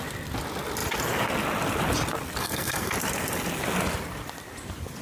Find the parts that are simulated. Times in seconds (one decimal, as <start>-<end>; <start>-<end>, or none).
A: 2.4-2.9